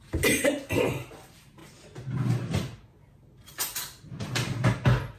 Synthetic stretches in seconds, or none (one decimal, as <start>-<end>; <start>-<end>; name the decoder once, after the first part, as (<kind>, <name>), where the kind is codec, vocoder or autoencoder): none